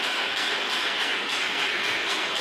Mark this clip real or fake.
fake